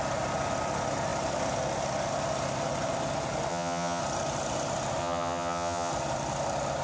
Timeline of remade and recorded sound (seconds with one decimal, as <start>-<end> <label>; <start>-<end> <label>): 0.0-3.5 recorded; 3.5-4.0 remade; 4.0-5.0 recorded; 5.0-5.9 remade; 5.9-6.8 recorded